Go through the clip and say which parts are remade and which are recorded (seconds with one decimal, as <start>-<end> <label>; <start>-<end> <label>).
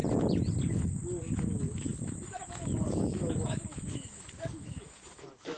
0.0-0.7 recorded; 0.7-5.6 remade